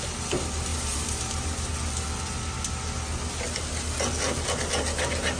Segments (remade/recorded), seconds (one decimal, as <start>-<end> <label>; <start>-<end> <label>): 0.0-0.7 recorded; 0.7-1.7 remade; 1.7-5.4 recorded

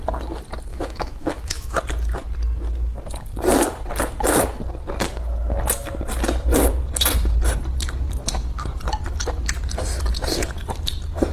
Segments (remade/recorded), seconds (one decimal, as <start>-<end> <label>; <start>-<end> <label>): 0.0-0.7 recorded; 0.7-1.8 remade; 1.8-11.3 recorded

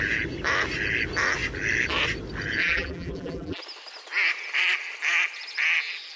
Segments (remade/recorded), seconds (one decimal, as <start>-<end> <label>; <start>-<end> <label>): 0.0-2.6 recorded; 2.6-3.6 remade; 3.6-6.2 recorded